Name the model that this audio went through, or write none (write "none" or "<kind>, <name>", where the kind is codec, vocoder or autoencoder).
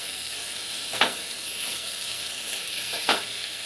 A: codec, SNAC